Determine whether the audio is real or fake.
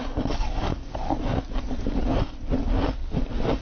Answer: real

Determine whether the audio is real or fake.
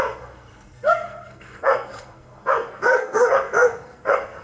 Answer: fake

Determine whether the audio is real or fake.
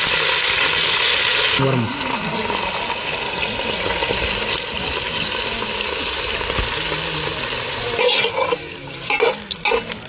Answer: real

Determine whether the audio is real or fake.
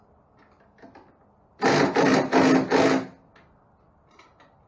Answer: real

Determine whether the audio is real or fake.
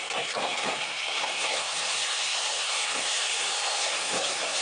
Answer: fake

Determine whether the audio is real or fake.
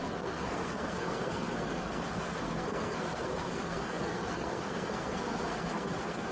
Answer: fake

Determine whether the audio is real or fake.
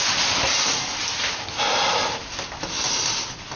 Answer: real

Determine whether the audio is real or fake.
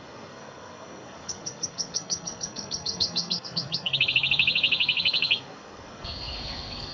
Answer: fake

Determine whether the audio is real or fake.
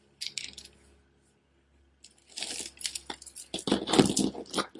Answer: real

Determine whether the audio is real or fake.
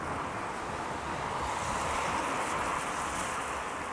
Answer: real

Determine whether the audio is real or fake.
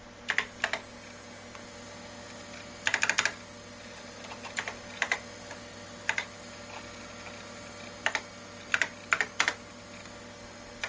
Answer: real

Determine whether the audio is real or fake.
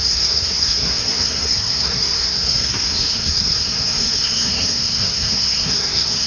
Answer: fake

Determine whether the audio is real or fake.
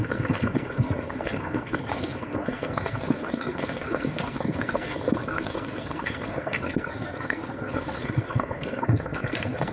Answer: fake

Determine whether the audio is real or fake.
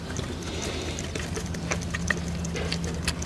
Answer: real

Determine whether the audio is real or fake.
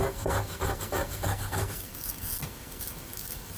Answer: fake